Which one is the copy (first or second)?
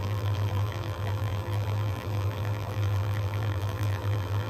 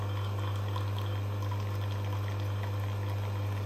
first